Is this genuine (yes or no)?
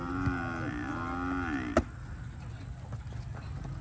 yes